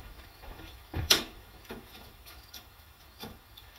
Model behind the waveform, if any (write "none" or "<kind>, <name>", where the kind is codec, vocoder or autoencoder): autoencoder, DAC-VAE